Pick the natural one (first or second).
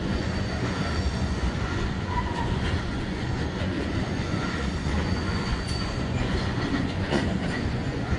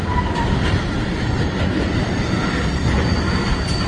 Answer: second